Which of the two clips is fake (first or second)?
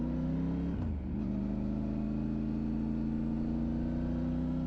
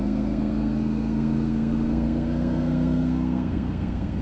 second